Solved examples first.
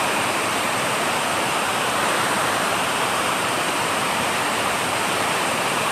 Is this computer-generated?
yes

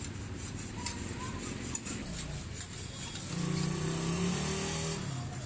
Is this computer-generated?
no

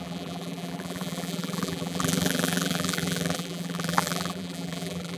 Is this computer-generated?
yes